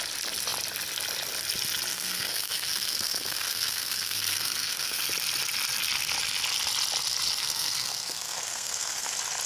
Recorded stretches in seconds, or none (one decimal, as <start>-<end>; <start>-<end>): 0.0-1.9; 5.0-7.4; 9.1-9.5